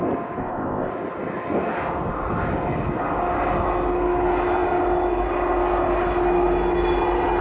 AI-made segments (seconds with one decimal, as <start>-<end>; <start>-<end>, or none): 0.4-0.9